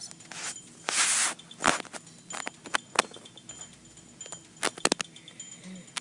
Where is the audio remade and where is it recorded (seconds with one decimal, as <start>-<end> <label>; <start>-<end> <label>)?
0.0-6.0 recorded